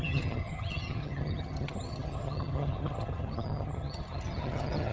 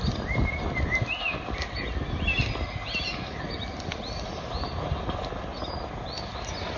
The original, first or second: second